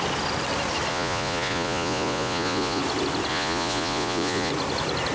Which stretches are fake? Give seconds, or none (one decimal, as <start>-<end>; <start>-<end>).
0.9-2.8; 3.3-4.5